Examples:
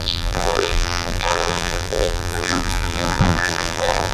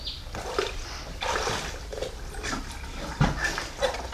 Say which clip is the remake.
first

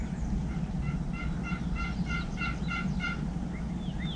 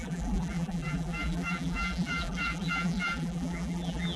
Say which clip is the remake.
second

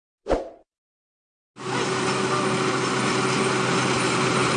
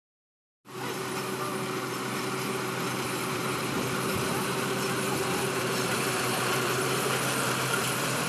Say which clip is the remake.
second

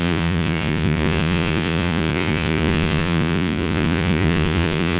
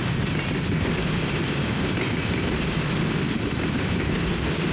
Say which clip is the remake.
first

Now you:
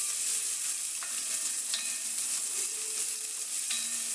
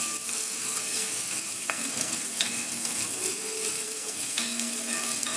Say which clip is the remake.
second